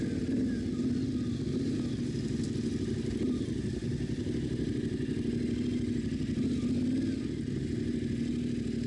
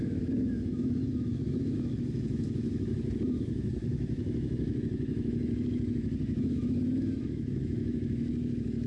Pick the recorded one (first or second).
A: first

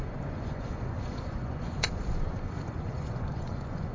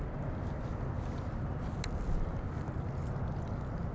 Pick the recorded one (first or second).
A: second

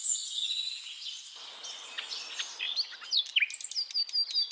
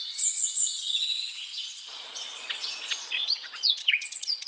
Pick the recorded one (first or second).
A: first